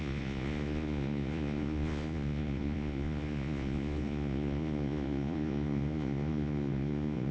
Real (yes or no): no